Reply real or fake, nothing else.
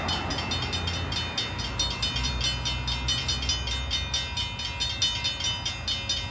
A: real